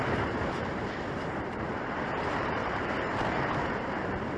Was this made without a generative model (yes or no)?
no